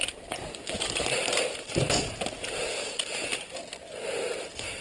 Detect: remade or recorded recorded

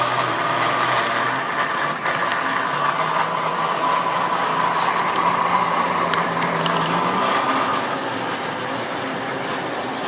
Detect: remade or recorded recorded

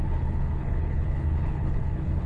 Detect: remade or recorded remade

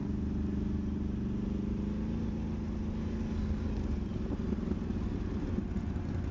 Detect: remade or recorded recorded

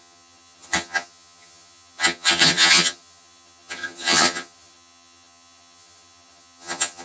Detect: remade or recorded remade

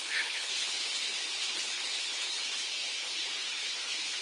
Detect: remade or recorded remade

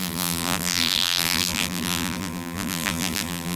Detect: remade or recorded remade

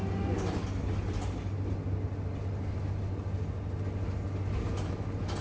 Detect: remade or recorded recorded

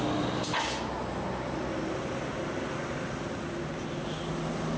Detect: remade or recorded recorded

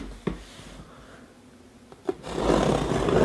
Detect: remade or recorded recorded